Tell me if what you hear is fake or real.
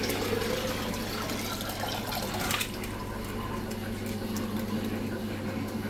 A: real